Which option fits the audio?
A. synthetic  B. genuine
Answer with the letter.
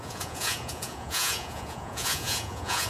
A